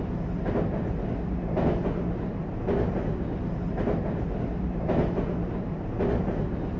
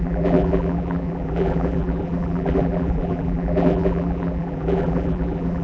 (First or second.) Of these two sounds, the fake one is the second